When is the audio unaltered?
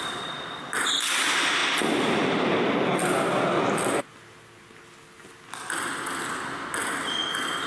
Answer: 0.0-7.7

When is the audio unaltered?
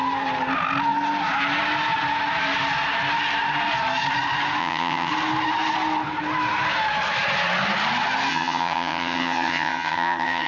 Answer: 0.0-4.6; 5.1-8.3